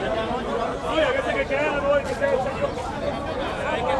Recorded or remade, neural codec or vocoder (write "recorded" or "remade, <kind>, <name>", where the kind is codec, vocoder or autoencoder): recorded